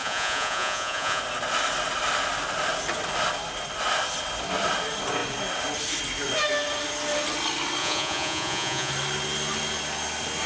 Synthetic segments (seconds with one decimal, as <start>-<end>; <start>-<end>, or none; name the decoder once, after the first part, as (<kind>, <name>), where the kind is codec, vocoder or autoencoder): 0.0-1.2 (vocoder, Vocos); 7.8-8.9